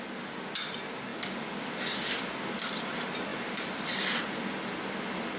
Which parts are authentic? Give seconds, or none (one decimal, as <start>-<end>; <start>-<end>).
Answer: 0.0-3.3; 4.4-5.4